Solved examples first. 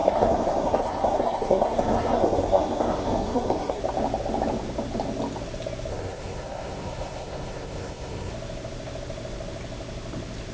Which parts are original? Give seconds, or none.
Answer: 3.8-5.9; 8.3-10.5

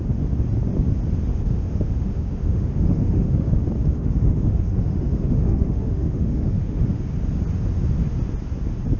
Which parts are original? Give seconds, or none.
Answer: 0.0-1.3; 3.5-3.9; 7.0-9.0

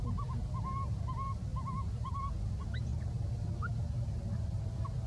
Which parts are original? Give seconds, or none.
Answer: 0.0-1.5; 2.2-5.1

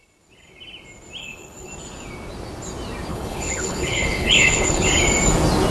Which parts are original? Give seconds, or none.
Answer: 0.0-1.2; 1.7-3.1; 4.9-5.7

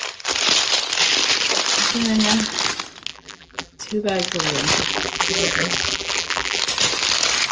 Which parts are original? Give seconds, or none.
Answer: 0.0-3.1; 3.8-4.9; 6.6-7.5

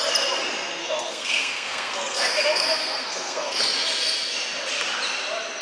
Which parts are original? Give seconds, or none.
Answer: 0.0-0.8; 3.6-5.6

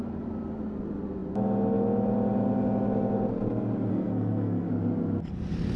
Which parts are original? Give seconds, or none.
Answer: 0.0-3.9; 4.7-5.8

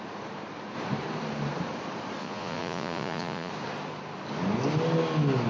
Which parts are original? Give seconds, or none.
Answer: 0.0-2.2; 3.5-5.5